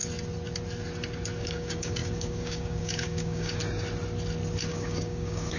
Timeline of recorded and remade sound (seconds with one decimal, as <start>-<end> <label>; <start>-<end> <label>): 0.0-1.4 recorded; 1.4-3.6 remade; 3.6-4.7 recorded; 4.7-5.6 remade